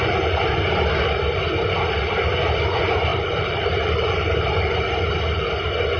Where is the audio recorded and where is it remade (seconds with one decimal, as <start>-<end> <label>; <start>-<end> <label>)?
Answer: 0.0-3.1 recorded; 3.1-5.0 remade; 5.0-6.0 recorded